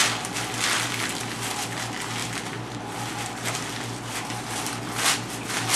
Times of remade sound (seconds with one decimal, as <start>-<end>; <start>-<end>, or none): none